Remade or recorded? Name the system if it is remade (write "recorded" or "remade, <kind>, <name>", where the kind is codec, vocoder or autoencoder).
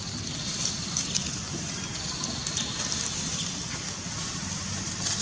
recorded